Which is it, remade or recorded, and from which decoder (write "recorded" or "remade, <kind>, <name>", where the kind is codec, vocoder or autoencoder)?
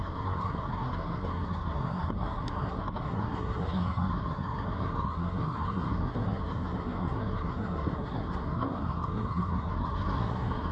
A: remade, codec, SNAC